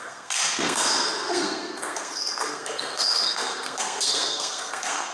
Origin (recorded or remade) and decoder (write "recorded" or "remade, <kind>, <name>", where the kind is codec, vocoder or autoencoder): remade, codec, SNAC